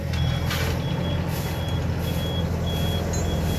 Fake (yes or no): no